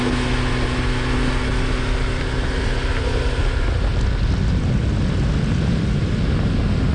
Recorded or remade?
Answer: recorded